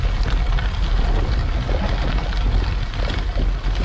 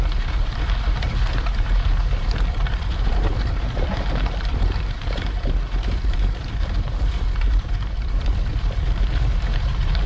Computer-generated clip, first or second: second